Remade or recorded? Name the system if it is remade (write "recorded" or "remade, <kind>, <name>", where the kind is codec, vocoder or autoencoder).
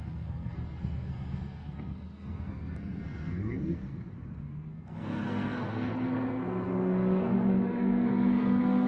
remade, codec, SNAC